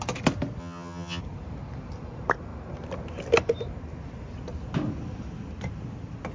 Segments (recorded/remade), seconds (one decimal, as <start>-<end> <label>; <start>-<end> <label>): 0.0-0.6 recorded; 0.6-1.2 remade; 1.2-6.3 recorded